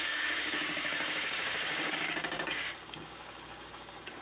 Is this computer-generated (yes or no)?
yes